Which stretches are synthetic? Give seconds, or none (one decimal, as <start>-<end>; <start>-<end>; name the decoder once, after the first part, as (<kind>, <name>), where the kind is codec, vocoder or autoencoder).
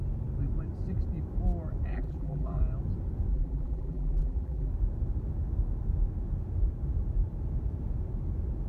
1.9-2.6 (vocoder, BigVGAN v2); 3.3-4.7